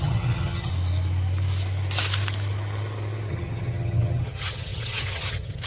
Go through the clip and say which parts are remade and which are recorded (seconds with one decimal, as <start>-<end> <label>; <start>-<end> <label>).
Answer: 0.0-0.7 remade; 0.7-3.3 recorded; 3.3-5.7 remade